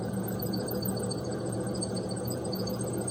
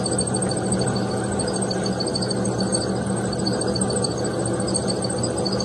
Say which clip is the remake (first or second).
first